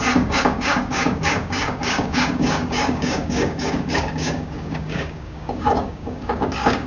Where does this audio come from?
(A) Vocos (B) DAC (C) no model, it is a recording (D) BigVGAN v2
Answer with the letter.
B